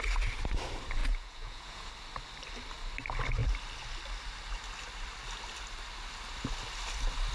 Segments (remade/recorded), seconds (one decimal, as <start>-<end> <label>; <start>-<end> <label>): 0.0-1.0 recorded; 1.0-1.9 remade; 1.9-7.3 recorded